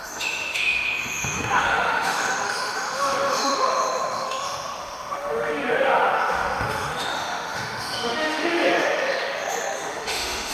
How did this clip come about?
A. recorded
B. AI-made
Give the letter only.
B